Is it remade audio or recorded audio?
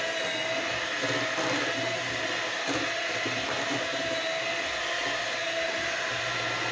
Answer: recorded